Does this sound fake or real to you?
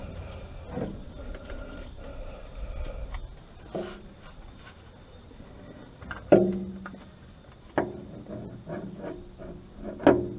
real